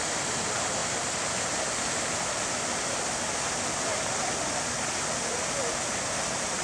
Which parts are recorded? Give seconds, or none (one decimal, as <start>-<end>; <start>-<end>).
0.0-6.6